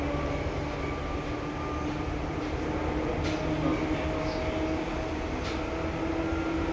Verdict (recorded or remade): recorded